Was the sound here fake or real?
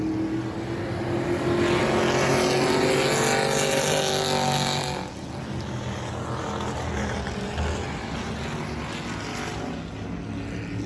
real